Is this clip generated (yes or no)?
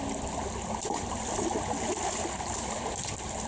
no